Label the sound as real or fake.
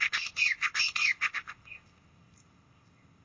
fake